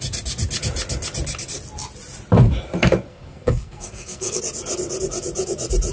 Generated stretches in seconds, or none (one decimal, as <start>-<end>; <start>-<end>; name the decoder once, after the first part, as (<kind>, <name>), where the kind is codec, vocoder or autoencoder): 3.1-4.4 (codec, SNAC)